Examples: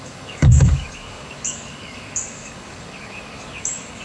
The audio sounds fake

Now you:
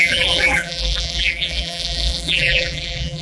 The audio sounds fake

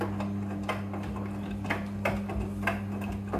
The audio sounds real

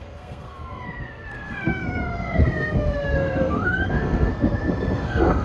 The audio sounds fake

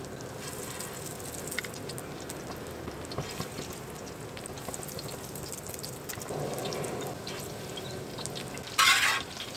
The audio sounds real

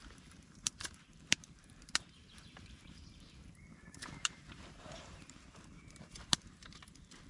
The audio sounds fake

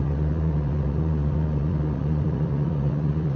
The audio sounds fake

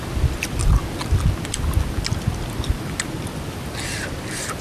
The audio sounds real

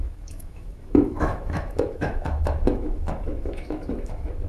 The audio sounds fake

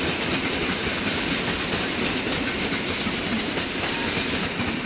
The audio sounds real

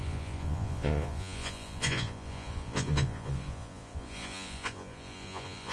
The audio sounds fake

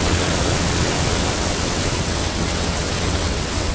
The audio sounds fake